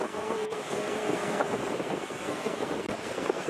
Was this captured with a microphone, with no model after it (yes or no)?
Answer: no